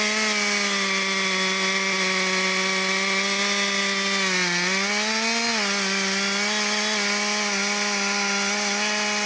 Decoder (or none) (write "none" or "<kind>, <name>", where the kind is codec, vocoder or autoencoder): none